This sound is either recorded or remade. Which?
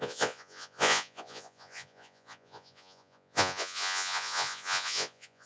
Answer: remade